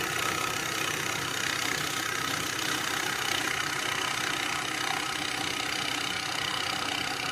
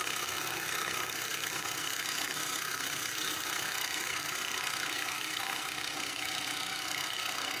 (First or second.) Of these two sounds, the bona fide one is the first